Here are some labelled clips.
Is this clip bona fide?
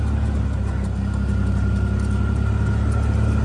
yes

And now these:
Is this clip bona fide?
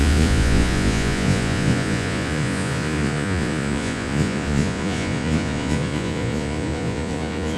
no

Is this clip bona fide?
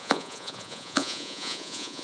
no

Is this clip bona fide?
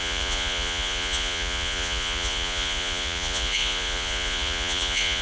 no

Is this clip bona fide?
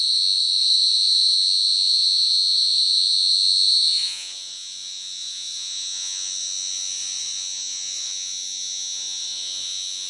no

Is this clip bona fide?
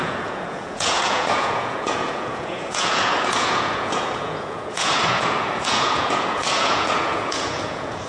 no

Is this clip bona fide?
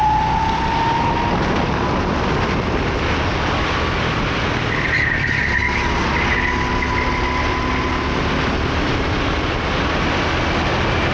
yes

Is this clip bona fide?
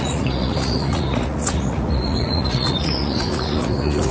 no